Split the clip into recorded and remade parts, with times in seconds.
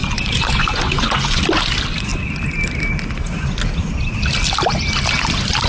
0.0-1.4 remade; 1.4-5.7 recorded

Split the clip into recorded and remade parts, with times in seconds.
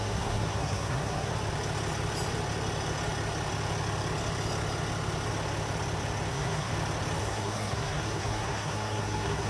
0.0-1.3 remade; 1.3-6.3 recorded; 6.3-6.7 remade; 6.7-7.2 recorded; 7.2-9.5 remade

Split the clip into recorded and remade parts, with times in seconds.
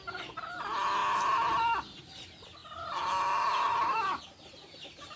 0.0-5.2 recorded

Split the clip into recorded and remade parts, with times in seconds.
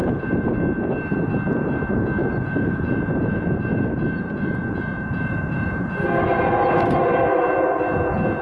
0.0-0.5 remade; 0.5-2.2 recorded; 2.2-7.0 remade; 7.0-8.4 recorded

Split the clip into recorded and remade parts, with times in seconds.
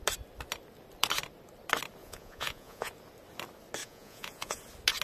0.0-2.0 recorded; 2.0-2.9 remade; 2.9-3.8 recorded; 3.8-4.6 remade; 4.6-5.0 recorded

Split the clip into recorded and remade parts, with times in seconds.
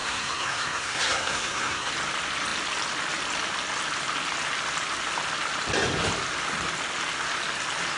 0.0-1.9 remade; 1.9-8.0 recorded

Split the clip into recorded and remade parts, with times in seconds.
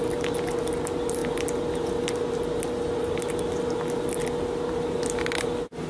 0.0-5.9 recorded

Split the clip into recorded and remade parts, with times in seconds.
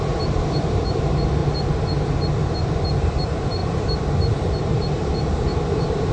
0.0-1.4 remade; 1.4-2.8 recorded; 2.8-3.6 remade; 3.6-4.8 recorded; 4.8-6.1 remade